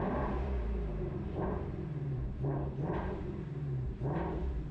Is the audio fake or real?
fake